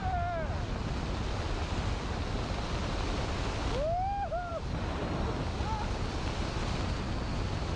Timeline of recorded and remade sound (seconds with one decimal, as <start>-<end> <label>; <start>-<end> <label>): 0.0-7.8 recorded